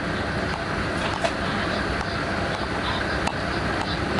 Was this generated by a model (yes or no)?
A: no